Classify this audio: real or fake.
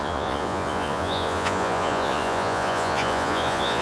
fake